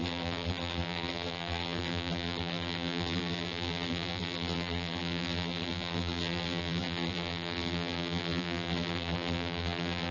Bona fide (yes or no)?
no